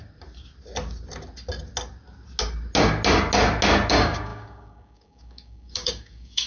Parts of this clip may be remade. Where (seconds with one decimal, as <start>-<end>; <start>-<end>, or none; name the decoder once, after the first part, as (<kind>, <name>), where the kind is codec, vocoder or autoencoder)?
3.9-6.5 (codec, DAC)